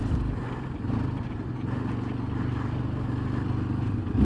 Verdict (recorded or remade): recorded